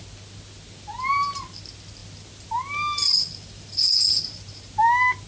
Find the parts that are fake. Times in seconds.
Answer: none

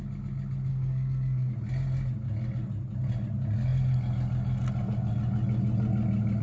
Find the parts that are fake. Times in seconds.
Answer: 0.7-1.5

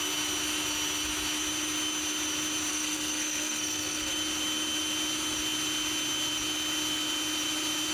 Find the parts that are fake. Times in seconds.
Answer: 2.7-4.1

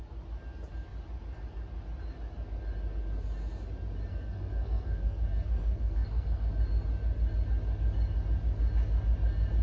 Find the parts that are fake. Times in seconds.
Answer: 4.1-6.5

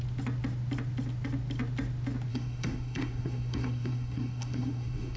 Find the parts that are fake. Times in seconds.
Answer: 2.3-5.2

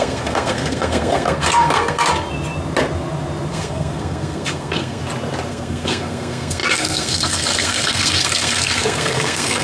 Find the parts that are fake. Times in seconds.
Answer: 0.0-2.1; 3.5-5.0; 5.5-9.6

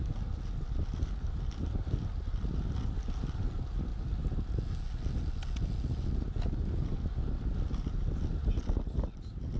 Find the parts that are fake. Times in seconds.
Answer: none

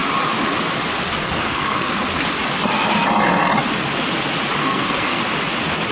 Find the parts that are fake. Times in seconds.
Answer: 1.2-1.9; 4.6-5.2